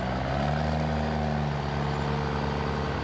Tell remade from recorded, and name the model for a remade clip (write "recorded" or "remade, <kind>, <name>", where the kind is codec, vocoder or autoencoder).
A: recorded